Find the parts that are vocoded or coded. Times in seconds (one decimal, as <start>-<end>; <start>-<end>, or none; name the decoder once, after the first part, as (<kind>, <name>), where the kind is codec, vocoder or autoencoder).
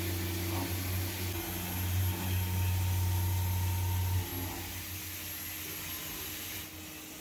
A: none